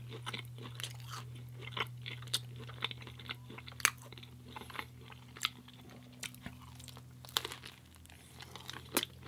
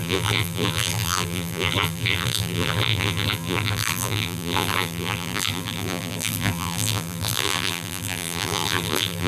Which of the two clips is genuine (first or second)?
first